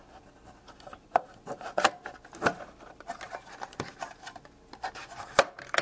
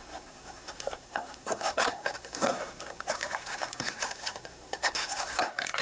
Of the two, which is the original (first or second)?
first